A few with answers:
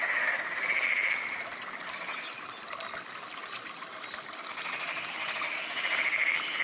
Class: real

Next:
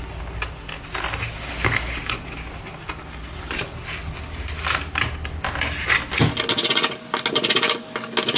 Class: real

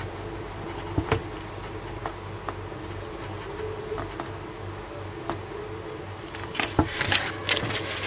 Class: real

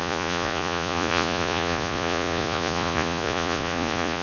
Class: fake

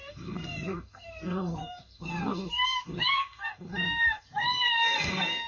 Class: fake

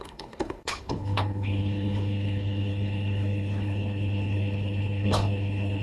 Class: fake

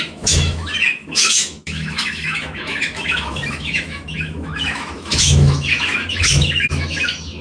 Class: fake